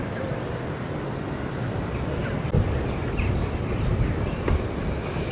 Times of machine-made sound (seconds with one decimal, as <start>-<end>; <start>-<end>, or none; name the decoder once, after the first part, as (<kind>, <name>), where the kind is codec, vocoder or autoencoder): 2.2-3.9 (vocoder, BigVGAN v2)